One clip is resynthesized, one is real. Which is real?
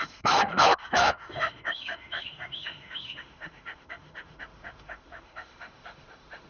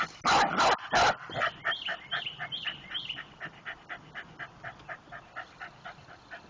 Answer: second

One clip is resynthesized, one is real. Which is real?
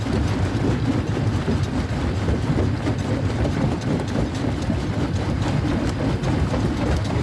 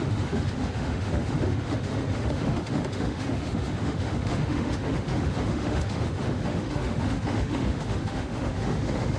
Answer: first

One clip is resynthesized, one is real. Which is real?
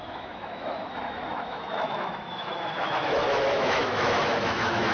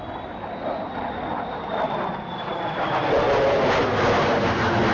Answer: second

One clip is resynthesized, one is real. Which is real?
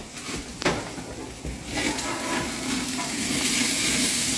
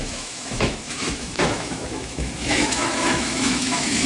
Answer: first